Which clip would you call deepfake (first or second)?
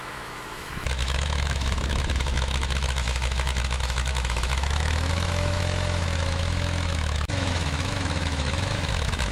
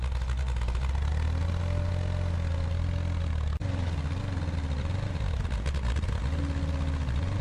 first